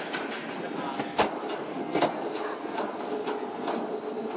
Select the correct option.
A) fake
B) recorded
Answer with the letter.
B